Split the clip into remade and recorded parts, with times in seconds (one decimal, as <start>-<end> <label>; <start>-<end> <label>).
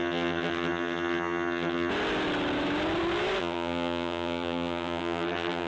0.0-1.9 remade; 1.9-3.4 recorded; 3.4-5.7 remade